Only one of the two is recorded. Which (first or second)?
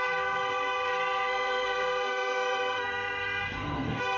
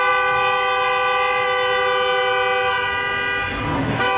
second